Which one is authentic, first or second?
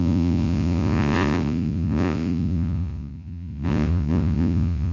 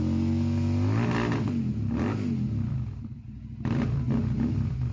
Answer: second